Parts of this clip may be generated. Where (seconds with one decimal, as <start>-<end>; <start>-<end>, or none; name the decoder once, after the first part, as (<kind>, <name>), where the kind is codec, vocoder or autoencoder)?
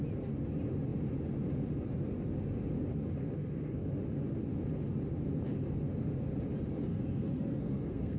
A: 3.2-4.0 (codec, SNAC); 6.9-8.2